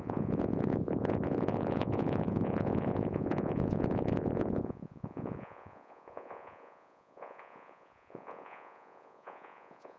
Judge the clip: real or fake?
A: fake